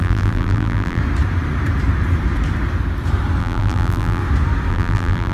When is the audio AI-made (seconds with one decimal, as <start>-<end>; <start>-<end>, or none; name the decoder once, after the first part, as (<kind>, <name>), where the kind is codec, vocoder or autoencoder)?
0.0-1.0 (vocoder, BigVGAN v2); 3.4-4.2; 4.7-5.3